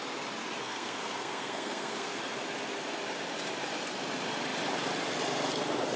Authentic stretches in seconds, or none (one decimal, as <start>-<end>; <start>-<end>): 0.0-0.6; 2.2-6.0